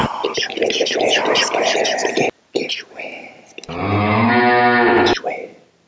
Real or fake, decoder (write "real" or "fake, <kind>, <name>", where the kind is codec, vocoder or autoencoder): real